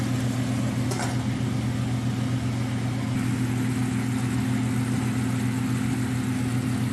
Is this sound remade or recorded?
recorded